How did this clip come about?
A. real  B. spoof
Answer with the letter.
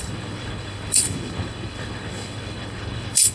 B